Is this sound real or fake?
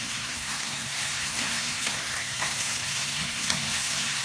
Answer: fake